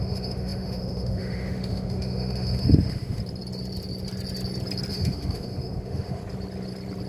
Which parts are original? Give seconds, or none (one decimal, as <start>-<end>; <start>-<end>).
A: 3.2-4.9; 6.2-7.1